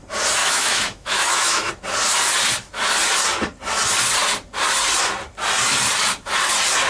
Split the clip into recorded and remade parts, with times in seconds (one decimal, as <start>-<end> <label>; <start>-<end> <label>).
0.0-0.4 recorded; 0.4-1.7 remade; 1.7-6.9 recorded

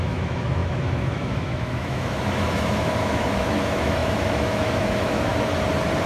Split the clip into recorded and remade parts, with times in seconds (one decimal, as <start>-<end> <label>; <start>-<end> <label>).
0.0-5.3 remade; 5.3-6.1 recorded

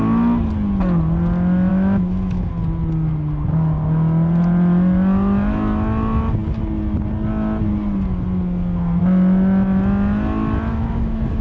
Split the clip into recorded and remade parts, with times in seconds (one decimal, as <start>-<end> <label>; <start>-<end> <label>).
0.0-1.7 recorded; 1.7-2.5 remade; 2.5-10.7 recorded; 10.7-11.4 remade

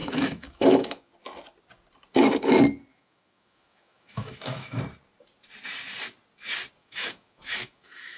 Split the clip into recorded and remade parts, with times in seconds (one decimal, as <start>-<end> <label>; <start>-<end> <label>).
0.0-1.1 remade; 1.1-2.9 recorded; 2.9-4.8 remade; 4.8-6.8 recorded; 6.8-8.2 remade

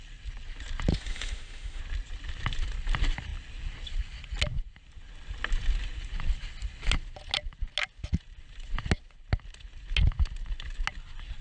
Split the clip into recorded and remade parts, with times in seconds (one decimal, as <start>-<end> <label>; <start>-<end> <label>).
0.0-0.9 recorded; 0.9-1.8 remade; 1.8-11.4 recorded

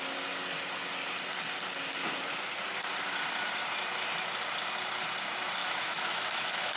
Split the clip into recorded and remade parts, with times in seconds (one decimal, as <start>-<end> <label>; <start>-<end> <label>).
0.0-5.6 recorded; 5.6-6.8 remade